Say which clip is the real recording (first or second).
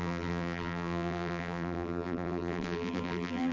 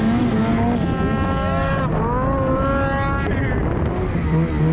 second